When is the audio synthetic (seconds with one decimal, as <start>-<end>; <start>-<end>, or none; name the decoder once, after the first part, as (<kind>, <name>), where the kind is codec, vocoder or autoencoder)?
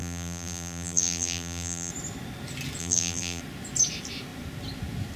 0.0-1.9 (vocoder, BigVGAN v2); 2.8-3.4